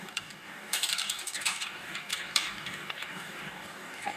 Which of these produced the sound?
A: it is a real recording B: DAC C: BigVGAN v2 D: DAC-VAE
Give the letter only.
B